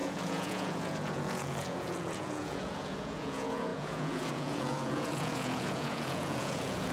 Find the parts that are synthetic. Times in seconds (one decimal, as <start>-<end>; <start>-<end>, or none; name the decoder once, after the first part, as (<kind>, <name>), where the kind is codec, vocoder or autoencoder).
0.0-6.9 (vocoder, Vocos)